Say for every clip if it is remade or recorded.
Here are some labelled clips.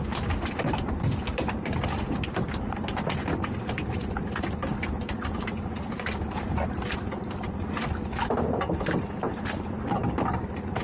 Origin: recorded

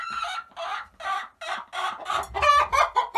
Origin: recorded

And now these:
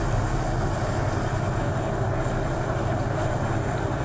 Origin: recorded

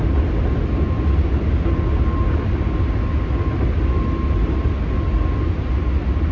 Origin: recorded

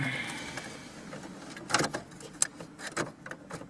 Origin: recorded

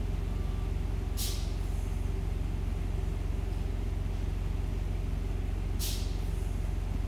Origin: recorded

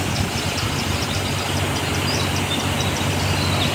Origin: recorded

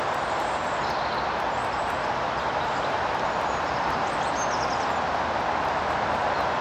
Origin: recorded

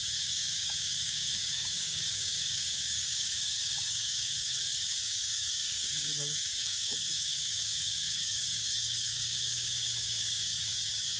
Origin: remade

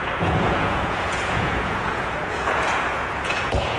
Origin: remade